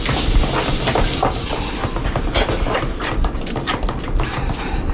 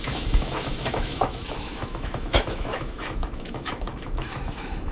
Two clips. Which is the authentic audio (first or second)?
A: first